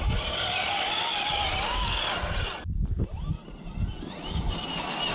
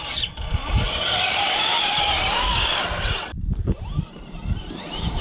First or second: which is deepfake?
second